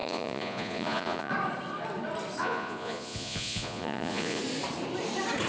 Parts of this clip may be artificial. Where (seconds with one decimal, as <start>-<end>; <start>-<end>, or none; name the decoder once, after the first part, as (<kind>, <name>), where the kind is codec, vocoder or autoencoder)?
0.0-1.3 (vocoder, Vocos); 2.4-4.4